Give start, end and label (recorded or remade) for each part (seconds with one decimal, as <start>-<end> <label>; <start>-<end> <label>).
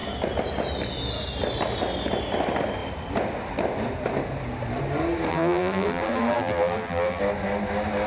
0.0-5.3 recorded; 5.3-7.2 remade; 7.2-8.1 recorded